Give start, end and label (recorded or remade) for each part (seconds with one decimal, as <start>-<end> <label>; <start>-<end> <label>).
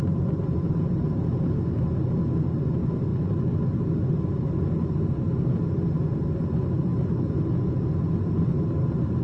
0.0-9.2 recorded